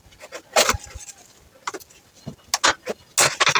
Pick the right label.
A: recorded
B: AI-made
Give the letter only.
A